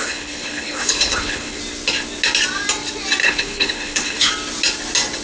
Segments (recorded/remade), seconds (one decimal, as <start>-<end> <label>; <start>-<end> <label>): 0.0-1.6 remade; 1.6-3.2 recorded; 3.2-4.3 remade; 4.3-5.2 recorded